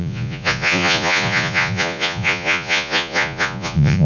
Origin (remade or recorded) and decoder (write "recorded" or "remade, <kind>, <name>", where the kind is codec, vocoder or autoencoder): remade, vocoder, Vocos